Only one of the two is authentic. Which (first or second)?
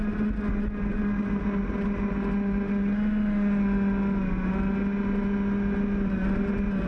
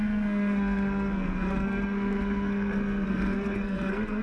first